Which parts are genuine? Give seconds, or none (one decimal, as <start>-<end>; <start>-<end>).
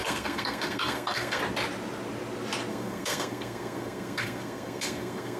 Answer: 1.4-2.7